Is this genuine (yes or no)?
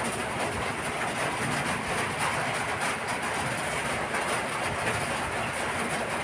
yes